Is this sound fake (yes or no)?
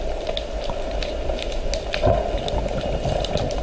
no